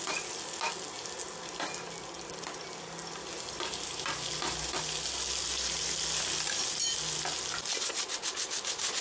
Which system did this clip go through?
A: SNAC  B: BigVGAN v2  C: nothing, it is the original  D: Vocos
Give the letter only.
C